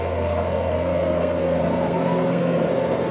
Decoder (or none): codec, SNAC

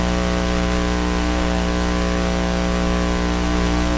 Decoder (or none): none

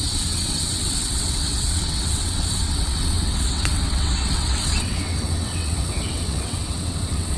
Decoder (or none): vocoder, WaveNeXt